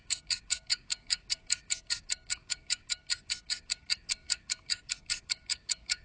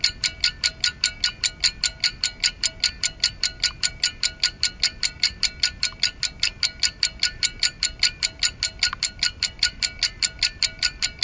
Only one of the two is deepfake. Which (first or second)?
first